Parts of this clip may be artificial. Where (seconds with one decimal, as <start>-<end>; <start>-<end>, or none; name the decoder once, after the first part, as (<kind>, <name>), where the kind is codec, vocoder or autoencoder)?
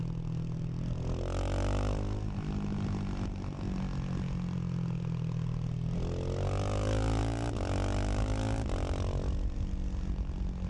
none